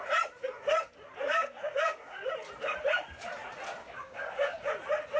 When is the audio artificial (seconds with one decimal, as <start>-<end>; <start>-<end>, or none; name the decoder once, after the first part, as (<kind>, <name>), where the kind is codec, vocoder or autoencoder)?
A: 1.4-2.3 (codec, DAC); 3.8-4.7